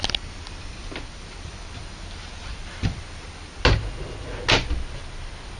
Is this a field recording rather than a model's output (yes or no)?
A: yes